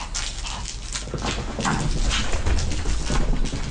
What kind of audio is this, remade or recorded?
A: recorded